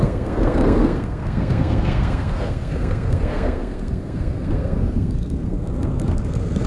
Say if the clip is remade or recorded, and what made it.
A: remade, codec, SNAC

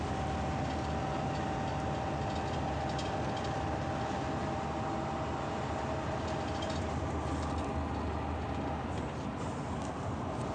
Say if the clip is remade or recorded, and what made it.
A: recorded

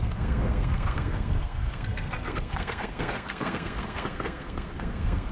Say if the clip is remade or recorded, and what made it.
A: remade, codec, SNAC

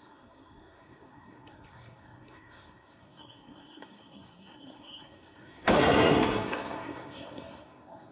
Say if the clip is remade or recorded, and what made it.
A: remade, codec, SNAC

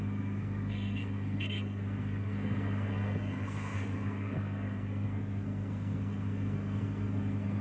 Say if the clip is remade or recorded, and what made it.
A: remade, codec, SNAC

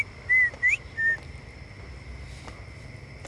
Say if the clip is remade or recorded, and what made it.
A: recorded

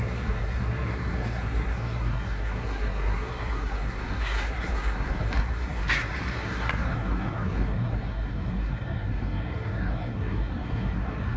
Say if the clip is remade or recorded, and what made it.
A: remade, codec, SNAC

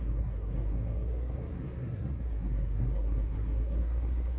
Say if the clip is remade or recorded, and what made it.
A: remade, codec, SNAC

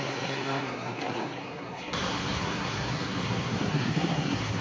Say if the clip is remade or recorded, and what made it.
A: remade, codec, SNAC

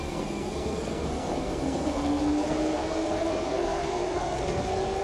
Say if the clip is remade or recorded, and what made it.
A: remade, codec, SNAC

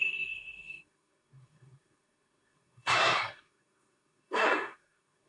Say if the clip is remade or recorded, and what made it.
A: remade, codec, SNAC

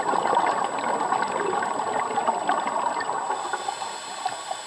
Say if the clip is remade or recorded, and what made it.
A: recorded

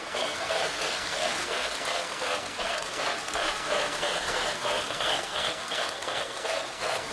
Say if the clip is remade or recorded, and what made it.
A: remade, codec, SNAC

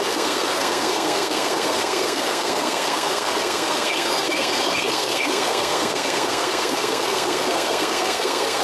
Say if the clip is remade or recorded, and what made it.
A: remade, codec, SNAC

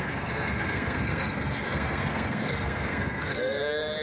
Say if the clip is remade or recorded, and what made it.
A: remade, codec, SNAC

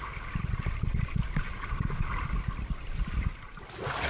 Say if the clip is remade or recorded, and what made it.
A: recorded